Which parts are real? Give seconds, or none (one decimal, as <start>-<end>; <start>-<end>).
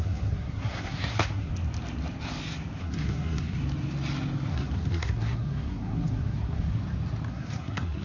1.5-2.8; 3.6-4.5; 6.8-7.3